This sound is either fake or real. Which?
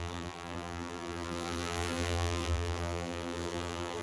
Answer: fake